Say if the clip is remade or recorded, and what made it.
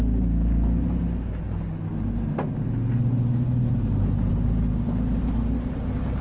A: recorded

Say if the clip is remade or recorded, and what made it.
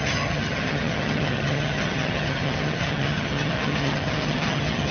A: remade, vocoder, HiFi-GAN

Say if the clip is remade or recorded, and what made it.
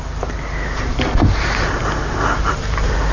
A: recorded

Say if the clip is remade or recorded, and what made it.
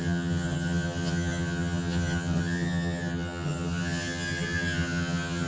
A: remade, vocoder, HiFi-GAN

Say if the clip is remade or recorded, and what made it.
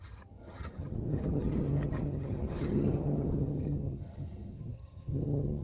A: remade, vocoder, HiFi-GAN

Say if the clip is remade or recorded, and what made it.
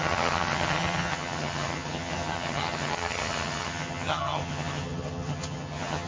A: remade, vocoder, HiFi-GAN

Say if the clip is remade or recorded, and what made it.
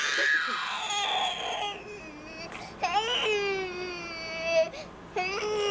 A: recorded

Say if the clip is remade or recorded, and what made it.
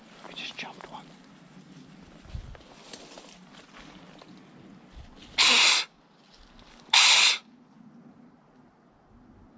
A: recorded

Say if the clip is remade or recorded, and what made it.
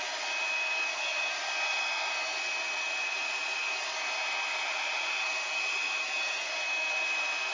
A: recorded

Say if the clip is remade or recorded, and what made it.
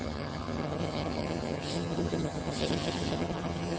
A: remade, vocoder, HiFi-GAN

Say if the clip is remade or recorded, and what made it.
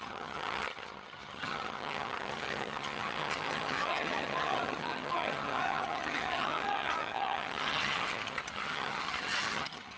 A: remade, vocoder, HiFi-GAN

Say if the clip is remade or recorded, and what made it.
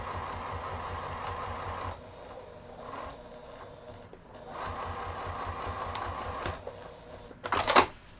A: recorded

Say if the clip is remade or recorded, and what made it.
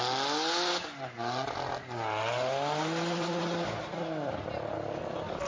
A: recorded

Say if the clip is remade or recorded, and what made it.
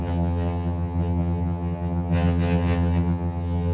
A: remade, vocoder, HiFi-GAN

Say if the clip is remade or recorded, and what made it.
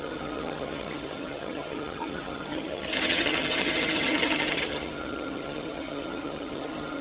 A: remade, vocoder, HiFi-GAN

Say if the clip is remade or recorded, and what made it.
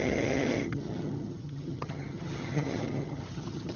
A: remade, vocoder, HiFi-GAN